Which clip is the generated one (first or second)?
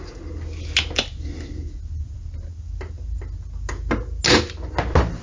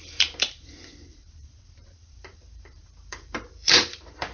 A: second